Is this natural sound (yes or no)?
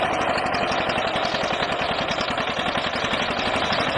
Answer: yes